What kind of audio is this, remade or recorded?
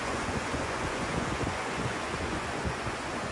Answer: remade